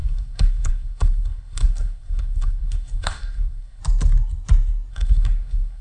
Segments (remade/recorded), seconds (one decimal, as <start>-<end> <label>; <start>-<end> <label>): 0.0-3.8 remade; 3.8-4.9 recorded; 4.9-5.8 remade